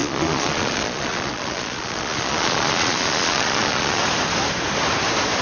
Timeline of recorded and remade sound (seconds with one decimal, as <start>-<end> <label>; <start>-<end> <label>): 0.0-4.0 remade; 4.0-5.4 recorded